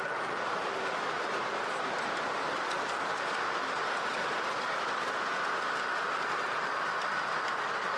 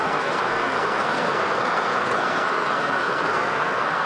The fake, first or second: second